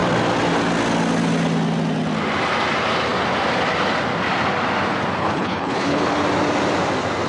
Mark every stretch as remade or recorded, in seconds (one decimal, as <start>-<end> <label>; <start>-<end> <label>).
0.0-5.2 recorded; 5.2-6.0 remade; 6.0-7.3 recorded